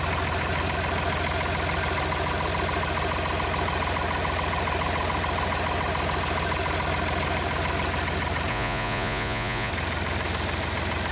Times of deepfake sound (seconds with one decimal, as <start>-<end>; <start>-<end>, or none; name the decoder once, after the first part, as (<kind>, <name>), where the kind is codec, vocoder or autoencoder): 8.5-9.7 (vocoder, Vocos)